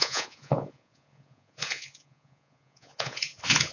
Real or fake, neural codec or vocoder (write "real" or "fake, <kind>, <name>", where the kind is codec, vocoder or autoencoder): fake, vocoder, Vocos